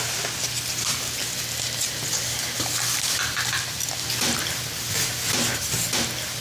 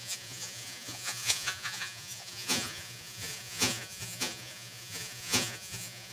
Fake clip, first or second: second